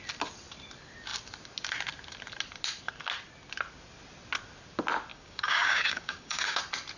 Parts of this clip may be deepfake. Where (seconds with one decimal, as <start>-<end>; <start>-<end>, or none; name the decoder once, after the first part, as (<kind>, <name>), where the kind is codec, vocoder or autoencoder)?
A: 5.1-6.6 (codec, DAC)